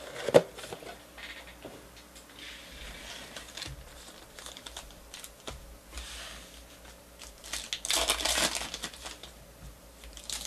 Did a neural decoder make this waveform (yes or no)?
no